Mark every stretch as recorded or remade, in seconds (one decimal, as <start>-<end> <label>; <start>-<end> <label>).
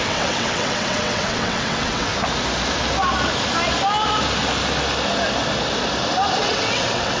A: 0.0-2.1 remade; 2.1-6.4 recorded; 6.4-7.2 remade